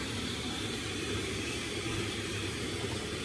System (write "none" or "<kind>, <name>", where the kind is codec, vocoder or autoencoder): vocoder, BigVGAN v2